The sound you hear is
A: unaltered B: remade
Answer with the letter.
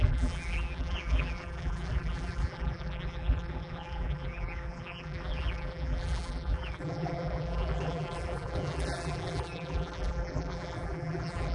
B